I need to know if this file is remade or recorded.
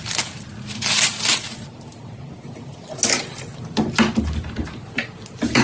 recorded